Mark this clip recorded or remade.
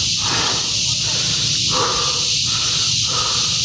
recorded